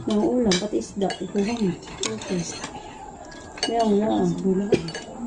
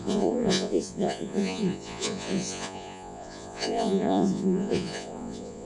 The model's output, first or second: second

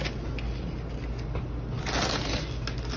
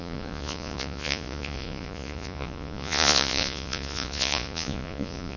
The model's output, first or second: second